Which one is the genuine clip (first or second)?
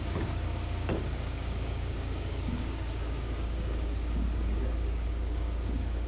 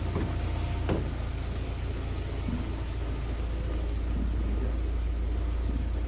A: second